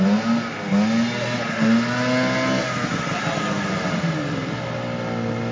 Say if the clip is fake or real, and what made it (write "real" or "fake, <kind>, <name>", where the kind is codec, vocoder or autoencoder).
real